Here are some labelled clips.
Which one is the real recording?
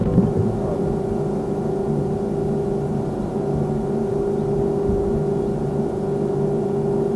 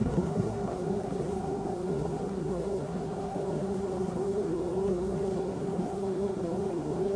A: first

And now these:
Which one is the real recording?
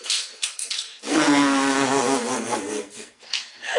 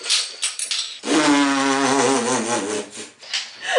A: second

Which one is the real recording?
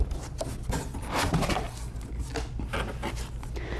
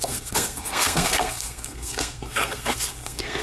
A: first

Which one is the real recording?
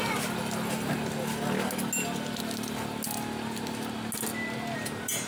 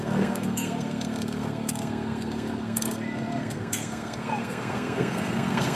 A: first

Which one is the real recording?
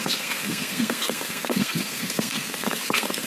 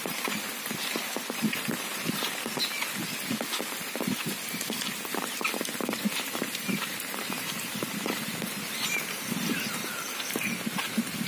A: second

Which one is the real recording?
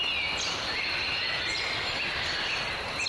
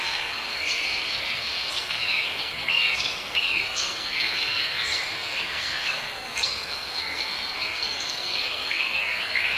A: first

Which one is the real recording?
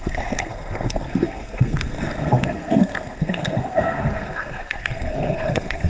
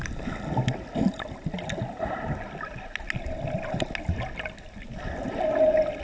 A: second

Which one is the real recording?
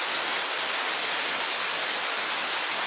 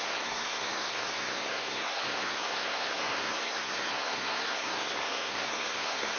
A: first